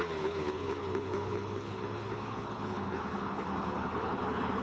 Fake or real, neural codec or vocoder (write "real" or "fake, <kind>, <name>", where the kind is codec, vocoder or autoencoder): fake, codec, HILCodec